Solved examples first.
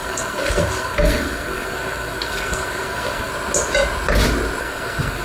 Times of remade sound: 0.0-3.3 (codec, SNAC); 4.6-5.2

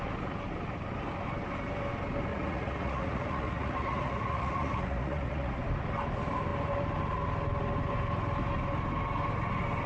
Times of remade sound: 2.3-5.6 (vocoder, Vocos)